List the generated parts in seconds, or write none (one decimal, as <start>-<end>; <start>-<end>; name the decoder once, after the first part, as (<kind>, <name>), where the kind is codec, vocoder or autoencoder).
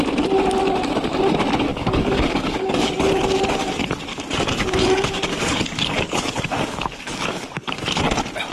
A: 1.7-2.9 (codec, DAC); 4.1-8.0